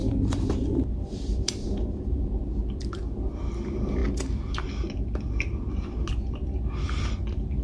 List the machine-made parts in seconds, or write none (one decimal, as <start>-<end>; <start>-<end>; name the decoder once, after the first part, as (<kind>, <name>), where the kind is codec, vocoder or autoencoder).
0.0-2.5 (vocoder, BigVGAN v2)